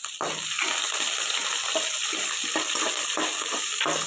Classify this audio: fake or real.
real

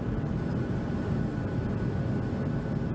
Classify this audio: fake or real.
real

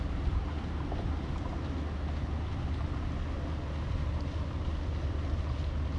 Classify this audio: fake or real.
real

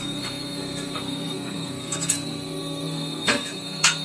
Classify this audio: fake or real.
fake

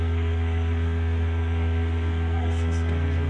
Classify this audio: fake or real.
fake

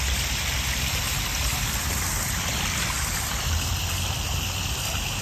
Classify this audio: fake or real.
real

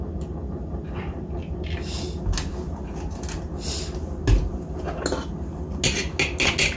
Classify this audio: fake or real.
real